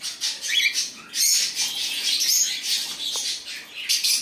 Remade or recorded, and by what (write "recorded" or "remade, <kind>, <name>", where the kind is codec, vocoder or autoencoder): recorded